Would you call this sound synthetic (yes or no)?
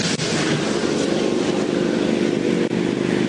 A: no